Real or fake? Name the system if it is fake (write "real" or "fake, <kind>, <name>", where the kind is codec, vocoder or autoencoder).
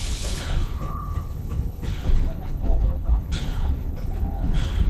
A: fake, codec, HILCodec